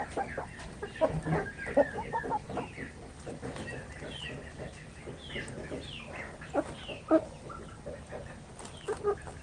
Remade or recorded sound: recorded